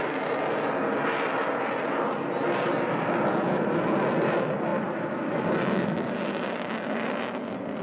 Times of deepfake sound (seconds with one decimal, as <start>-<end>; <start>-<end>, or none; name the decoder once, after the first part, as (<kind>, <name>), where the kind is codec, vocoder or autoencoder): none